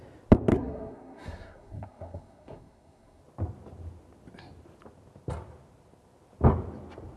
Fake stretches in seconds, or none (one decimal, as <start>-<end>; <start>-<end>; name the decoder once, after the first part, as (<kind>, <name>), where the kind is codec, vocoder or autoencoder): 0.5-3.2 (codec, SNAC)